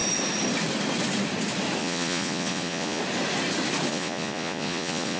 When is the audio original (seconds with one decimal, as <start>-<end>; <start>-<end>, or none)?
0.0-1.8; 3.0-3.9